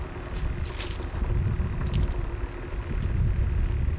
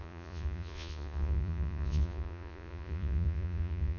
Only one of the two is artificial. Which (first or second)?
second